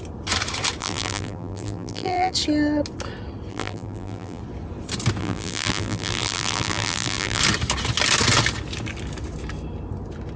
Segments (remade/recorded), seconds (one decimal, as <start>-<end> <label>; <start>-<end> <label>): 0.0-0.8 recorded; 0.8-2.3 remade; 2.3-3.5 recorded; 3.5-4.4 remade; 4.4-5.2 recorded; 5.2-7.4 remade; 7.4-10.4 recorded